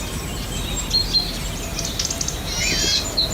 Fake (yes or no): no